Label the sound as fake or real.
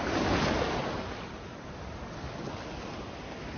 real